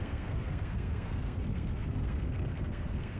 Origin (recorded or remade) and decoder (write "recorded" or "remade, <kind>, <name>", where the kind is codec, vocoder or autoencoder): remade, codec, SNAC